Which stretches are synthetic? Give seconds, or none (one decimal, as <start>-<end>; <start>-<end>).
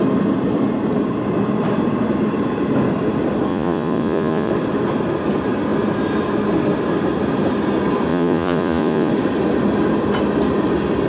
3.5-4.5; 8.1-9.1